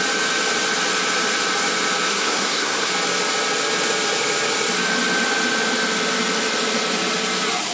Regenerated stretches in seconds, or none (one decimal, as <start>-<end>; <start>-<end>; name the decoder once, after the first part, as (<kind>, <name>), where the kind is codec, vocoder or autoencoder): 2.1-2.9 (codec, SNAC)